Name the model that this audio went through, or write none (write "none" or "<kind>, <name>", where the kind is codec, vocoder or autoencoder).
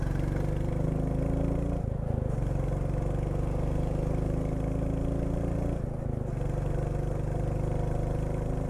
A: none